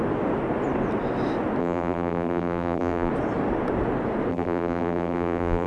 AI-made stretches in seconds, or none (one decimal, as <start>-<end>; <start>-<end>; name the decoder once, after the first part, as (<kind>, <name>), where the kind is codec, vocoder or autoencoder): 1.6-3.1 (vocoder, BigVGAN v2); 4.3-5.7